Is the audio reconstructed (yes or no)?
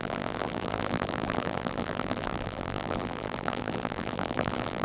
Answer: yes